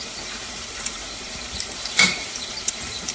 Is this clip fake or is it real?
fake